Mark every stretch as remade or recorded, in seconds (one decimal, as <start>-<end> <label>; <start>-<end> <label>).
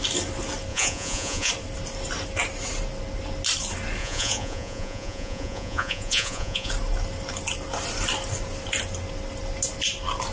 0.0-0.7 recorded; 0.7-1.5 remade; 1.5-4.0 recorded; 4.0-6.7 remade; 6.7-10.3 recorded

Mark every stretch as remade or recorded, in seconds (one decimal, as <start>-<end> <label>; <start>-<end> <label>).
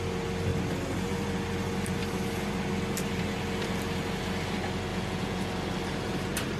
0.0-4.9 recorded; 4.9-5.5 remade; 5.5-6.6 recorded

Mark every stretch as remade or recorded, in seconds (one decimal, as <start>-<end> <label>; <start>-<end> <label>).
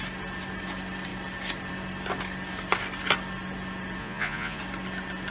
0.0-4.0 recorded; 4.0-4.6 remade; 4.6-5.3 recorded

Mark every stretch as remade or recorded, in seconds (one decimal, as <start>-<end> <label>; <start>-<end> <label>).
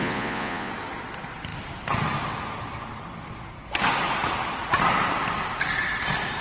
0.0-0.7 remade; 0.7-6.4 recorded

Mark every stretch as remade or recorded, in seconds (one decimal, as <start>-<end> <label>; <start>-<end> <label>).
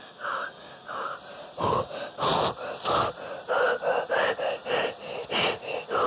0.0-1.1 remade; 1.1-1.6 recorded; 1.6-2.3 remade; 2.3-6.1 recorded